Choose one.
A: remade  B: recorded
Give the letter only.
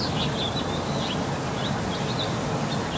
B